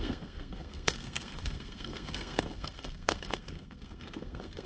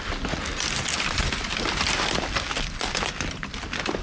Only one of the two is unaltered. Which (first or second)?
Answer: second